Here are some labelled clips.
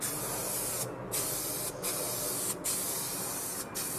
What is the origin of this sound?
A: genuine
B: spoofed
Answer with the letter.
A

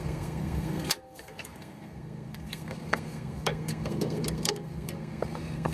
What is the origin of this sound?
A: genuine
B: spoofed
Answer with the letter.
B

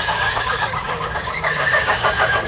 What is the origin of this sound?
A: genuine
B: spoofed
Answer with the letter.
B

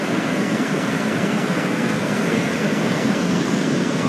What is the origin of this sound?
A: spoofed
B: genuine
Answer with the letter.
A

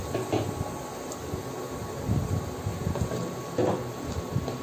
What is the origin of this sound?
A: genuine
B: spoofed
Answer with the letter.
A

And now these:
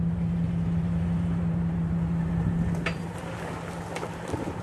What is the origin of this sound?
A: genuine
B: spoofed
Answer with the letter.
A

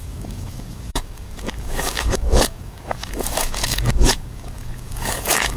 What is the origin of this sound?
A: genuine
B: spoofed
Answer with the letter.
B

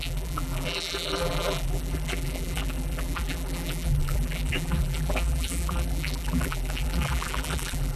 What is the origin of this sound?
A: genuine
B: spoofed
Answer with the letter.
B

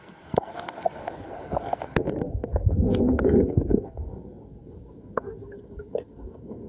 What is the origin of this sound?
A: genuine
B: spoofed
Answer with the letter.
B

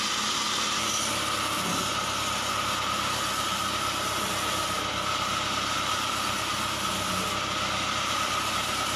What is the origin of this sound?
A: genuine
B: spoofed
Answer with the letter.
A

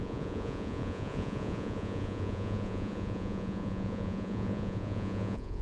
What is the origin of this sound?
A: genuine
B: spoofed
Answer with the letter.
B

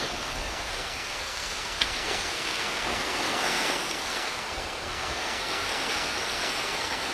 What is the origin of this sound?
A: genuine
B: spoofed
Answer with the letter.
B